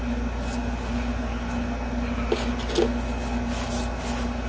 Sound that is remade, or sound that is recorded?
recorded